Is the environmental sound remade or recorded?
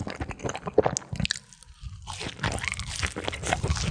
recorded